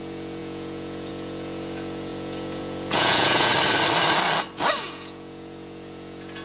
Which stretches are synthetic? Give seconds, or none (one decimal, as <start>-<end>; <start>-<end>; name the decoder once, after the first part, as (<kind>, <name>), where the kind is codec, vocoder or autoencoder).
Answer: 0.0-3.5 (vocoder, Vocos); 4.8-6.4